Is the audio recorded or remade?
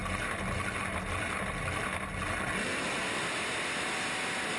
recorded